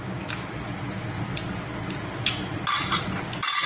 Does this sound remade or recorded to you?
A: recorded